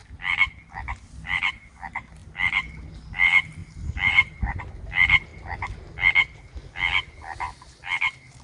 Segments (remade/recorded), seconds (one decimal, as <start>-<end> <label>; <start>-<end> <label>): 0.0-3.6 recorded; 3.6-4.6 remade; 4.6-8.4 recorded